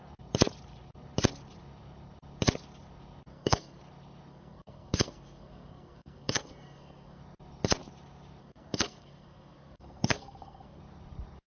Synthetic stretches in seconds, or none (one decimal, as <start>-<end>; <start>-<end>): 3.3-3.8; 4.3-7.2; 8.4-10.8